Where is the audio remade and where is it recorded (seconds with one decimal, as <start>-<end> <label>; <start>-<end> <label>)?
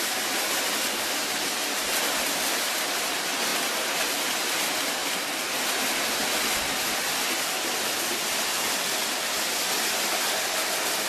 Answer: 0.0-11.1 recorded